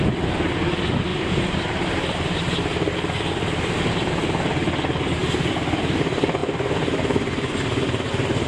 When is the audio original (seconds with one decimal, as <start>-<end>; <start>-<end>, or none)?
0.0-1.1; 2.6-8.5